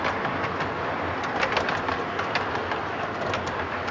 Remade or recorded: recorded